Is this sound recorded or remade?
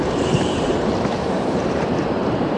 remade